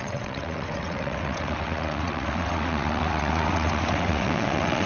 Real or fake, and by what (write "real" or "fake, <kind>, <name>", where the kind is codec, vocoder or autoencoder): fake, vocoder, WaveNeXt